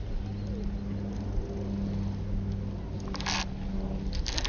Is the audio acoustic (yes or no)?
yes